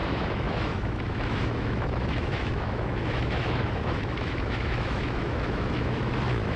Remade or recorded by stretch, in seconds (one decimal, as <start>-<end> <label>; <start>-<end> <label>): 0.0-6.6 remade